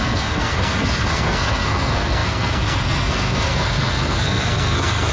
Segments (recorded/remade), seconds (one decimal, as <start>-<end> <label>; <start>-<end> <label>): 0.0-5.1 remade